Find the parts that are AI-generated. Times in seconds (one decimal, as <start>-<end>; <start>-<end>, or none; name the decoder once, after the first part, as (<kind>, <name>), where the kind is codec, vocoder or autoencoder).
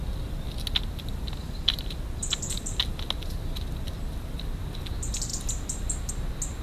1.4-2.8 (vocoder, BigVGAN v2); 5.3-6.1